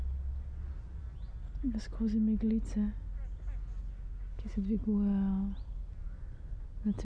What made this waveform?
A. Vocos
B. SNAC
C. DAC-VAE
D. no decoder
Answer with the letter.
D